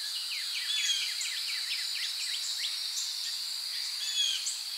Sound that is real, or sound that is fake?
real